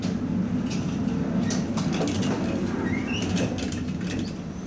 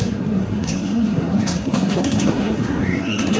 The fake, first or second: second